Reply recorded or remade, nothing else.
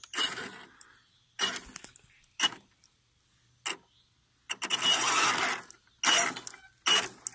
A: recorded